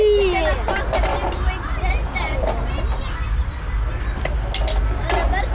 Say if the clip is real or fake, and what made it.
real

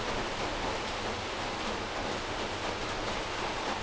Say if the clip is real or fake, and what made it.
real